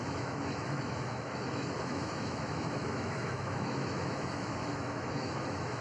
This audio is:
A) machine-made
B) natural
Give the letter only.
A